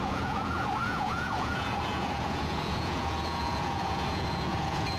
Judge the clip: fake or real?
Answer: fake